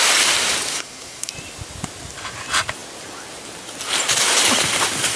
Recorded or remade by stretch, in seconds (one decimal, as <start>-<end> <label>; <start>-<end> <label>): 0.0-0.7 recorded; 0.7-1.3 remade; 1.3-5.2 recorded